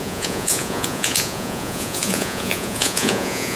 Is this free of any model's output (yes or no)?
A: no